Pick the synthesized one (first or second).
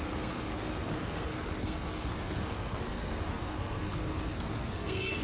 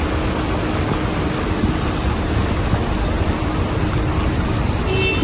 first